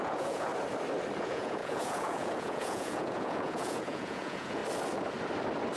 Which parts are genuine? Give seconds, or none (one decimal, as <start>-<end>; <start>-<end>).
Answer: 0.5-1.2; 4.6-5.8